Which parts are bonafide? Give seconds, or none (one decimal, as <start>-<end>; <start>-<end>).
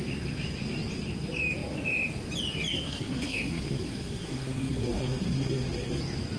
0.0-2.7; 6.0-6.4